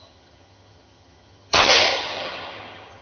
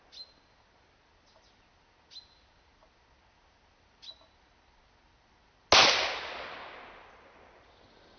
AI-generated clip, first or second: first